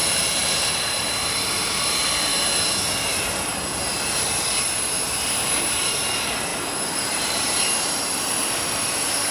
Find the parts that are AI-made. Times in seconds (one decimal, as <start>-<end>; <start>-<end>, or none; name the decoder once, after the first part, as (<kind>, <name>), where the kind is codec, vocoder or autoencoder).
0.0-2.3 (vocoder, BigVGAN v2); 4.6-9.3